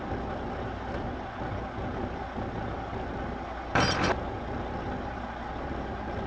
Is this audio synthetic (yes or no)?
no